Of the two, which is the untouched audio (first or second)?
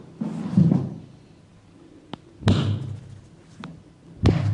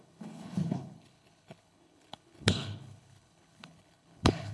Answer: first